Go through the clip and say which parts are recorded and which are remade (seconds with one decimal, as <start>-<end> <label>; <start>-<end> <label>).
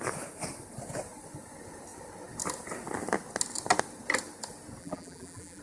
0.0-4.8 recorded; 4.8-5.6 remade